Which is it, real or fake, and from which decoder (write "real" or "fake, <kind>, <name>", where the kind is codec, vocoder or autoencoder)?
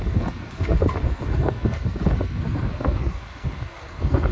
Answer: fake, codec, SNAC